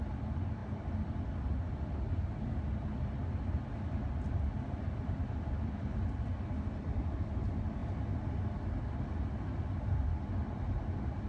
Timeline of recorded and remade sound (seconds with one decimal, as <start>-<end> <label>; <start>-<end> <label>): 0.0-11.3 recorded